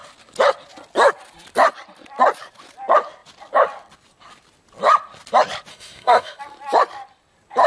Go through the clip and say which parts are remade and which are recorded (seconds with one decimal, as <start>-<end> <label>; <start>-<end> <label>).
0.0-5.7 recorded; 5.7-6.4 remade; 6.4-7.7 recorded